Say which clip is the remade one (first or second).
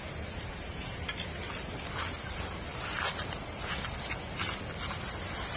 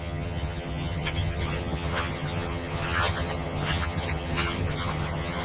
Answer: second